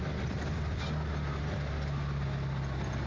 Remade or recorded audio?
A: recorded